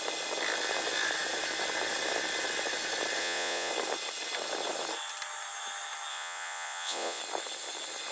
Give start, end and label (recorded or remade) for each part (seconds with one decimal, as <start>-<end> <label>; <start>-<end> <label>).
0.0-3.2 recorded; 3.2-3.7 remade; 3.7-6.1 recorded; 6.1-7.2 remade; 7.2-8.1 recorded